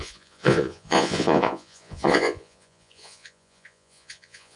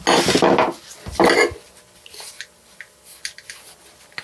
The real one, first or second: second